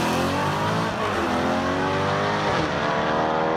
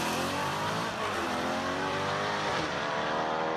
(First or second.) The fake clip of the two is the second